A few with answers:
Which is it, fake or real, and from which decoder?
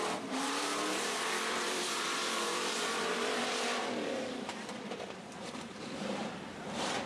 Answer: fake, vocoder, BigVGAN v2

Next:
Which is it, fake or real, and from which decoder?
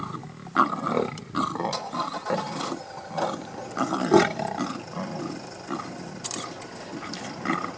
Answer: real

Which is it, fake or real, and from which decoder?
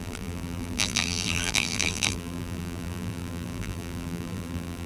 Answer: fake, vocoder, BigVGAN v2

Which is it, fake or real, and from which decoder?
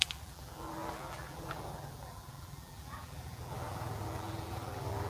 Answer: fake, vocoder, BigVGAN v2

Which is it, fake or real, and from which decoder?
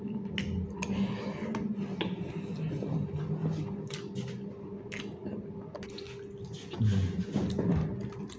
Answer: real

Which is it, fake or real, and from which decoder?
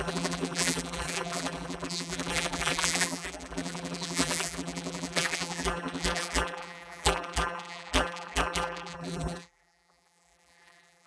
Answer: fake, vocoder, BigVGAN v2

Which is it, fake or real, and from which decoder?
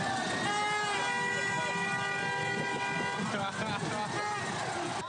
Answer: real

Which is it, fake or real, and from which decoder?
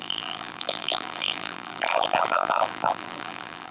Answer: fake, vocoder, BigVGAN v2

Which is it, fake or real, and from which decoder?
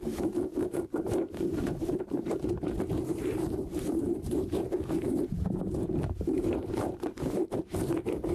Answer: fake, vocoder, BigVGAN v2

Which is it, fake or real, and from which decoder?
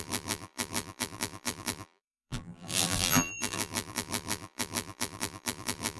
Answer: fake, vocoder, BigVGAN v2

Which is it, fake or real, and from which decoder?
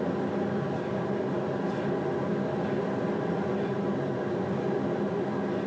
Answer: real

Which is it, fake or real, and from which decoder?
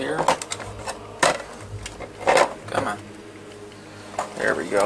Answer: real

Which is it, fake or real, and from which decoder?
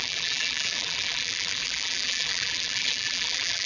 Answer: fake, vocoder, BigVGAN v2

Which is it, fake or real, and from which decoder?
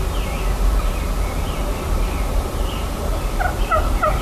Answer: real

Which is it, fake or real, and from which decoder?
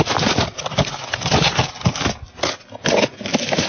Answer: real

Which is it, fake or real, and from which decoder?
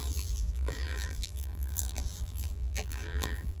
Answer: fake, vocoder, BigVGAN v2